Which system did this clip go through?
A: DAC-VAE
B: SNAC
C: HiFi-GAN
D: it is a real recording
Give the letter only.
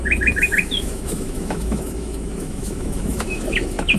A